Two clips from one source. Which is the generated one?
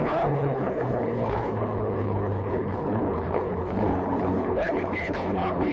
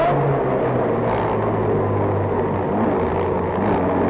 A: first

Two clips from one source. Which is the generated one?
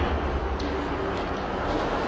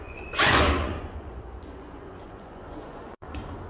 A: second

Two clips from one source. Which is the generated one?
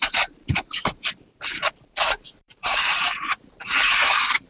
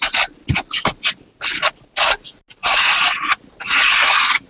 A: first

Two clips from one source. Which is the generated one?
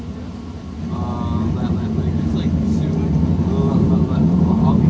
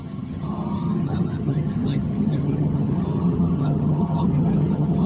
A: second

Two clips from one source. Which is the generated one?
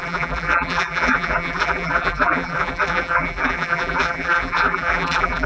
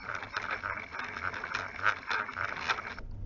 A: first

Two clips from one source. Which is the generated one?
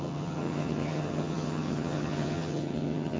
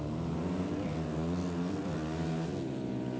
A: first